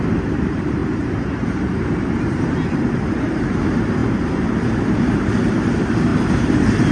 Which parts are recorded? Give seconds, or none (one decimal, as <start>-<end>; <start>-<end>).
none